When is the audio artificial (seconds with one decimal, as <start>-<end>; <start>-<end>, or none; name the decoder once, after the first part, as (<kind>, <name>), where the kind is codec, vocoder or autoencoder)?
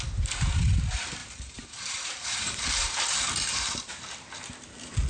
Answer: 1.2-4.3 (vocoder, BigVGAN v2)